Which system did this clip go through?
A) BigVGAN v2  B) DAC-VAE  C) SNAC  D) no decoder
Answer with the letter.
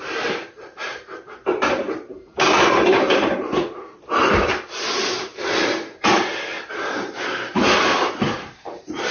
A